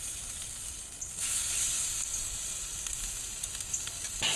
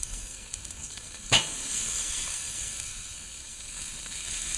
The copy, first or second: second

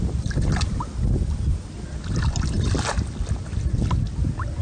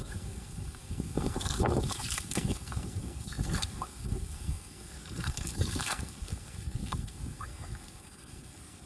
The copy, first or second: second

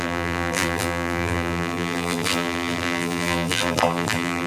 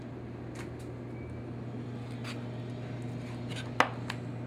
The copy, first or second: first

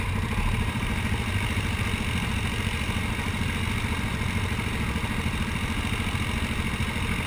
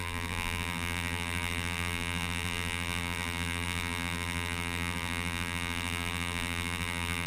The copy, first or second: second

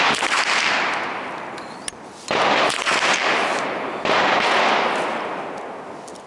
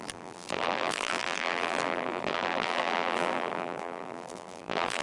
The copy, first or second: second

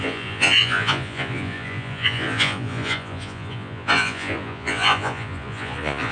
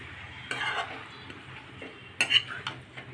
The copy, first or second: first